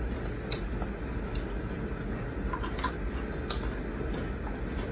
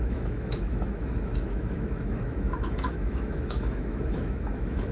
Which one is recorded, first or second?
first